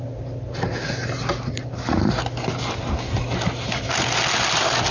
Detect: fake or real real